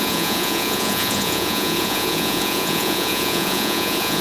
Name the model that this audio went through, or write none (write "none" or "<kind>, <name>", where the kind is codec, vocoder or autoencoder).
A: vocoder, Vocos